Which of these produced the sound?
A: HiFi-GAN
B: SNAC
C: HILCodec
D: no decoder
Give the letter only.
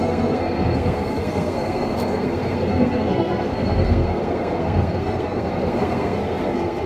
B